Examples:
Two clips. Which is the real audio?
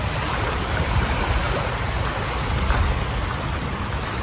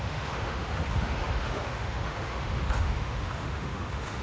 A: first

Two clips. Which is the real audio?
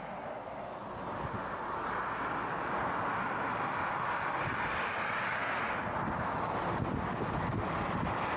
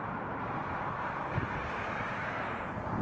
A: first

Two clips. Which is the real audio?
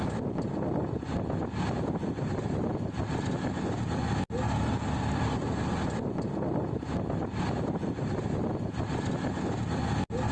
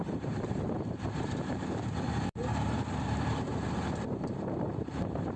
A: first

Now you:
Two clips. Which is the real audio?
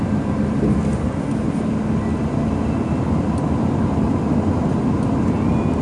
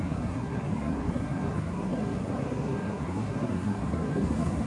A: first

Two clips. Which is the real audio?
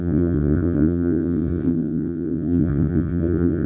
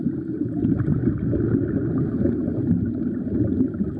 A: second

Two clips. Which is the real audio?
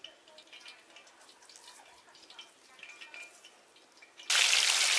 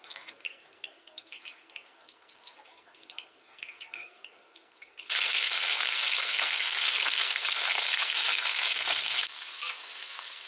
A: first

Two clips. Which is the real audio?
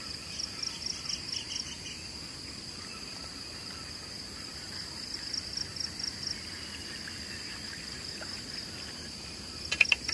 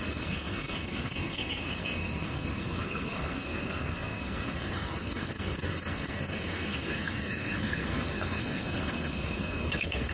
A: first